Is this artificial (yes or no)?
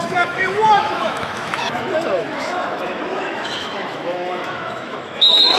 yes